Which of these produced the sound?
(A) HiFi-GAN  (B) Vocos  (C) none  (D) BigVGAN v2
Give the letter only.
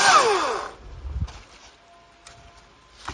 C